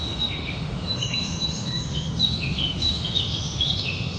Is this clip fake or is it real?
fake